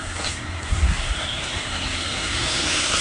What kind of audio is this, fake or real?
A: fake